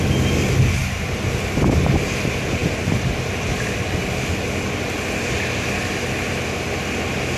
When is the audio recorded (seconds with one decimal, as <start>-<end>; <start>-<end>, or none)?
0.0-7.4